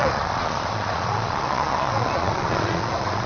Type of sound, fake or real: fake